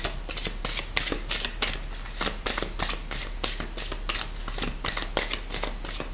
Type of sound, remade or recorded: recorded